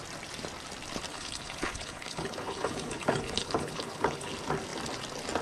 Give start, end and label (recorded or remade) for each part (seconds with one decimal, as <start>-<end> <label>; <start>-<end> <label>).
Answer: 0.0-1.1 recorded; 1.1-4.3 remade; 4.3-5.4 recorded